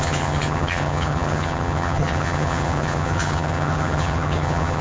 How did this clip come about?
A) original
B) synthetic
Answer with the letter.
B